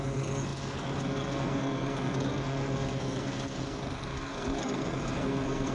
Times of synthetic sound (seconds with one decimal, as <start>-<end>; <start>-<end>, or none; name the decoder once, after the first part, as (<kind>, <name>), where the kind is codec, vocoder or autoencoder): 0.0-5.7 (codec, SNAC)